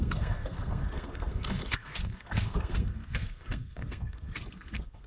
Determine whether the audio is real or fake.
fake